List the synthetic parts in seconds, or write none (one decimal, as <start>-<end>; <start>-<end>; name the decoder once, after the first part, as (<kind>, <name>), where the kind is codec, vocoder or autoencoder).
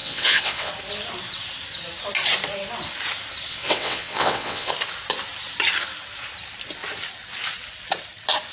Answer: 0.0-0.7 (vocoder, WaveNeXt); 3.5-4.7